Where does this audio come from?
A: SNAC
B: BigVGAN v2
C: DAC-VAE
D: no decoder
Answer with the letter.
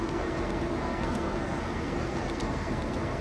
A